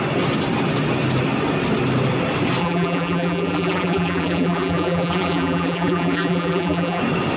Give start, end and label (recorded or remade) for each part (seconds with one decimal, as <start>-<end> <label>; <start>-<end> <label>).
0.0-2.6 recorded; 2.6-7.0 remade; 7.0-7.4 recorded